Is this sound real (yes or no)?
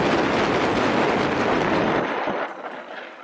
yes